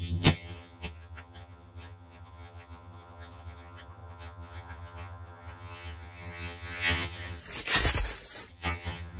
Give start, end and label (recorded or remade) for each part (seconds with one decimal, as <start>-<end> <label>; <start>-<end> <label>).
0.0-7.4 remade; 7.4-8.5 recorded; 8.5-9.2 remade